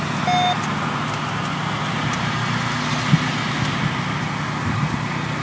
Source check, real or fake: real